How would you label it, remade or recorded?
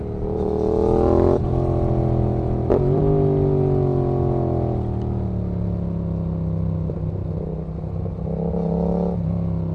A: recorded